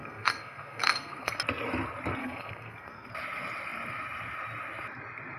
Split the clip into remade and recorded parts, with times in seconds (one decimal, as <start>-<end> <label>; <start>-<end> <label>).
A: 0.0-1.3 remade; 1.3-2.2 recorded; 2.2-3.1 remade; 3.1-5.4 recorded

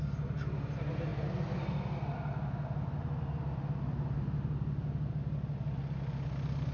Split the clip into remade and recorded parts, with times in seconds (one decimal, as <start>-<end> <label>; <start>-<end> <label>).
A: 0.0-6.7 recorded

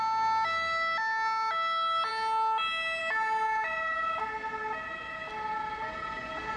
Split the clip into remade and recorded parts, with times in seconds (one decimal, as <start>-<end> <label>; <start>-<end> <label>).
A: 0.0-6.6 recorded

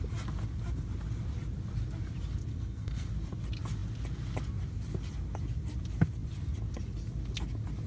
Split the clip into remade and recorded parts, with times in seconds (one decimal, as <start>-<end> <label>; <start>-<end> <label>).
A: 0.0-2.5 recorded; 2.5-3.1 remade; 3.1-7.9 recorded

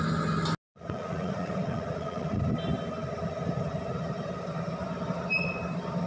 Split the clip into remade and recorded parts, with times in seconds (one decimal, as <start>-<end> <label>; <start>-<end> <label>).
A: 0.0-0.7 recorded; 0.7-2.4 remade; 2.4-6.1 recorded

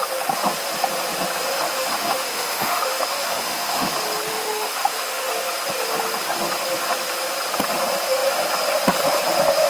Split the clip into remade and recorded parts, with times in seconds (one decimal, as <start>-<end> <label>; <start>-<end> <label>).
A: 0.0-1.7 recorded; 1.7-3.9 remade; 3.9-4.3 recorded; 4.3-5.3 remade; 5.3-9.7 recorded